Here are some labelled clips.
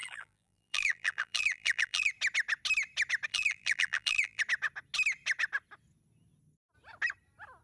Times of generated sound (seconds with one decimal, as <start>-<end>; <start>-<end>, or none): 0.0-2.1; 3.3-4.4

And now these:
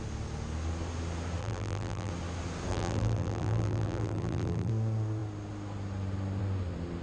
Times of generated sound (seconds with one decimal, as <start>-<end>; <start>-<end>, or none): 1.4-2.1; 2.7-4.7

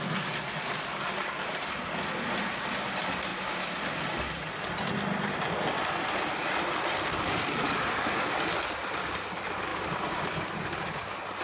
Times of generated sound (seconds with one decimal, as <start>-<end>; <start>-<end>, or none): 3.3-3.8; 9.7-11.4